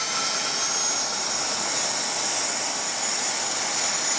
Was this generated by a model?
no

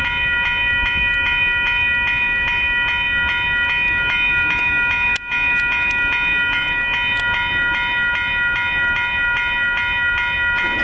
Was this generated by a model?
no